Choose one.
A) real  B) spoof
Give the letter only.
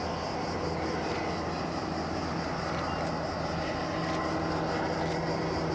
A